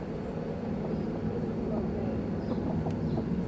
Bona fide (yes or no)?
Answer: yes